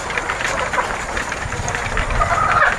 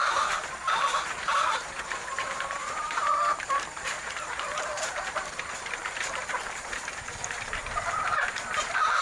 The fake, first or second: second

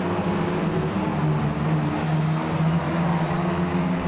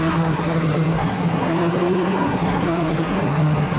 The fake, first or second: second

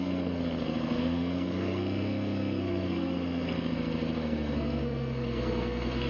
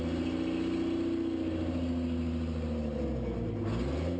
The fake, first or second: first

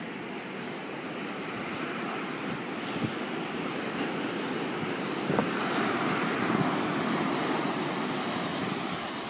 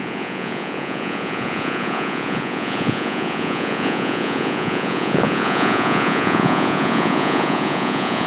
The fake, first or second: second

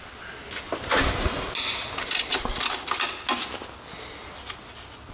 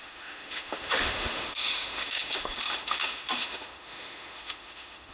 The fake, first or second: second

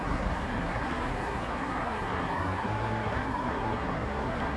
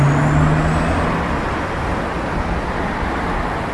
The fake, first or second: first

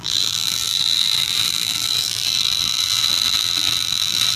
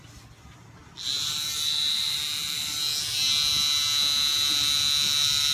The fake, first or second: first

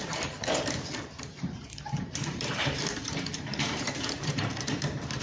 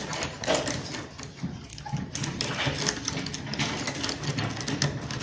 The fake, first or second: first